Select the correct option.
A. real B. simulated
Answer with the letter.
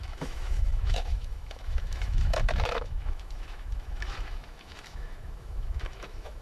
B